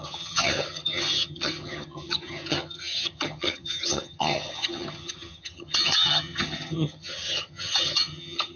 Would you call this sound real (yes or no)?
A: no